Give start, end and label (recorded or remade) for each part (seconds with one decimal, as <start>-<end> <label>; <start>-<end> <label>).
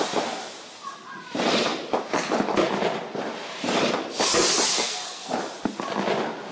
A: 0.0-4.7 recorded; 4.7-5.3 remade; 5.3-6.5 recorded